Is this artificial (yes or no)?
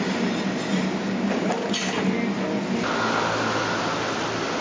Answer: no